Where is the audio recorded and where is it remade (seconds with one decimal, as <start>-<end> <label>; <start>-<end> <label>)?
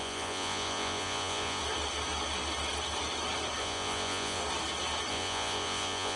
0.0-1.6 remade; 1.6-3.6 recorded; 3.6-4.4 remade; 4.4-5.1 recorded; 5.1-6.2 remade